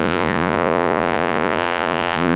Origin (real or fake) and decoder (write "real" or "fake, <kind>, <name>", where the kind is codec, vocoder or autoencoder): fake, vocoder, Vocos